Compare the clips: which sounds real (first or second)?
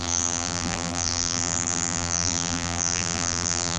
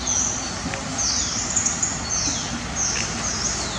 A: second